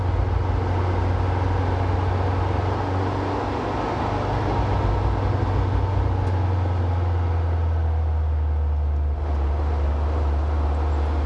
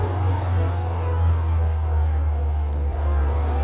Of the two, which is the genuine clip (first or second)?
first